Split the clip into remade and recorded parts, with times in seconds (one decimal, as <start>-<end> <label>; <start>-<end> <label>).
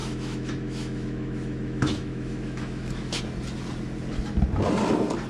0.0-3.2 remade; 3.2-5.3 recorded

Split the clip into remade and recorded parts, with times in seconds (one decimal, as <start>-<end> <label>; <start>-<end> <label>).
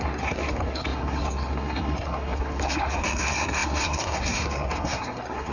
0.0-5.5 remade